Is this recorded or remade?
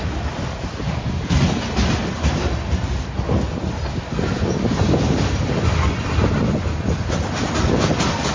recorded